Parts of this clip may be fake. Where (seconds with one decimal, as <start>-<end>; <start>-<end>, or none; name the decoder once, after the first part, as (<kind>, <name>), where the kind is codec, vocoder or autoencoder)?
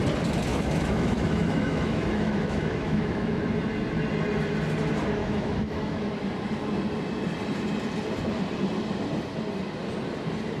0.5-3.4 (autoencoder, DAC-VAE); 5.2-6.1